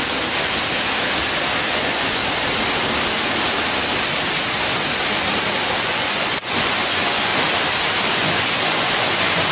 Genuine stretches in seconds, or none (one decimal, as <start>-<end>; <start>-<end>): 0.0-1.6; 2.2-5.8; 7.3-8.1